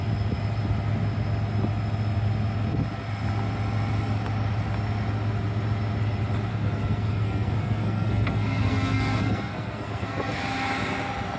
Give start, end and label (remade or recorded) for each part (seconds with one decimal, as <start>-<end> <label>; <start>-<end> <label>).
0.0-6.5 recorded; 6.5-10.4 remade; 10.4-11.4 recorded